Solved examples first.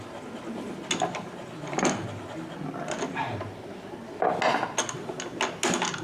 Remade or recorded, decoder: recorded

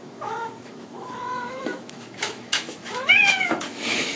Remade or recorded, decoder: remade, autoencoder, DAC-VAE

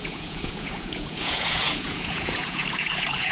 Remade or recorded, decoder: remade, vocoder, Vocos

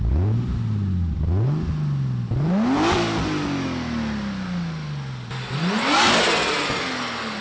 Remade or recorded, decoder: recorded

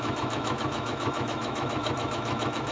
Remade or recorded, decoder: remade, autoencoder, DAC-VAE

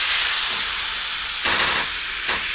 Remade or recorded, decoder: recorded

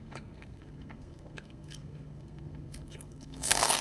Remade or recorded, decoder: remade, codec, SNAC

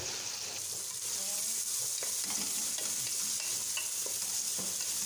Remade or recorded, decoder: recorded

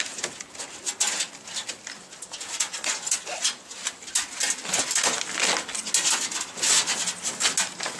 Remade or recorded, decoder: recorded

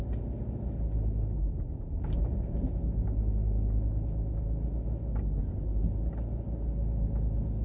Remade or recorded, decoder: recorded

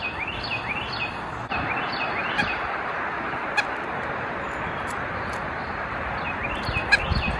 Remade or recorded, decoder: remade, vocoder, BigVGAN v2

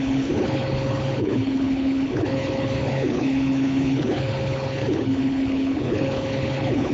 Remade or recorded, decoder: remade, codec, HILCodec